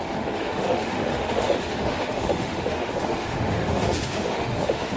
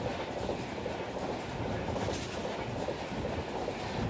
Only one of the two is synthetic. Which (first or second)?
first